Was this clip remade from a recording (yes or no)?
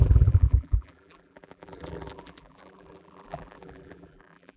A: yes